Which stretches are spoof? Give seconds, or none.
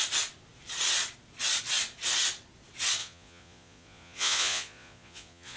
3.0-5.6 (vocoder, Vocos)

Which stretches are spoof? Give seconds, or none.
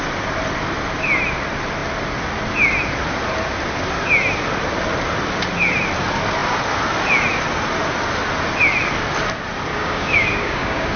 9.7-11.0 (codec, DAC)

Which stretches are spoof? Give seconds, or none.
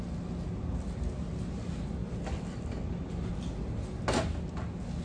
none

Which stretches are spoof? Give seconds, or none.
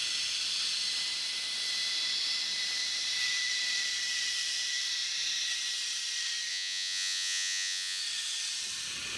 6.5-8.0 (vocoder, Vocos)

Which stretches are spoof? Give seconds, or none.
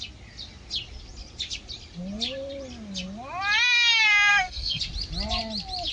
4.3-4.8 (codec, SNAC)